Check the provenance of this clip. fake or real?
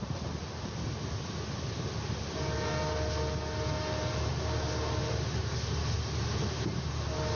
real